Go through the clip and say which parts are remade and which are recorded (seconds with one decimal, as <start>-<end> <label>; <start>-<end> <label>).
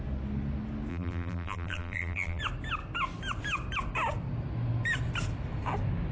0.0-0.9 recorded; 0.9-2.4 remade; 2.4-6.1 recorded